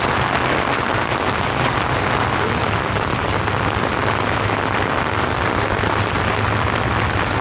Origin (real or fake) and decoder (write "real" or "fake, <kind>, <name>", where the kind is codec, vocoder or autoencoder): real